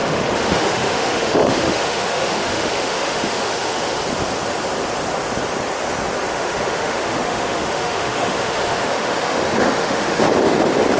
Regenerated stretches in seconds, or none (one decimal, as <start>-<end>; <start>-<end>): 0.0-4.0; 6.3-10.2